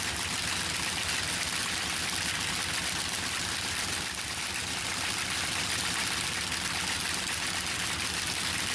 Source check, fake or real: real